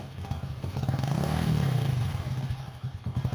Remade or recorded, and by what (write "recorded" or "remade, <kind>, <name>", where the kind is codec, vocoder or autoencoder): remade, codec, DAC